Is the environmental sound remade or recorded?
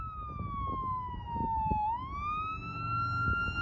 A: recorded